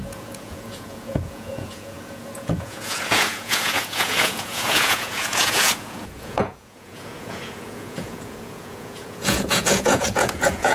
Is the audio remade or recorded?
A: remade